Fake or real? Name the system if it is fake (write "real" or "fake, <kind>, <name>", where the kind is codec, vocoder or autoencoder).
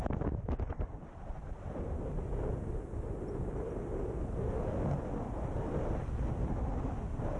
real